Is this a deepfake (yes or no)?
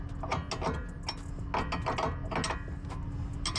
no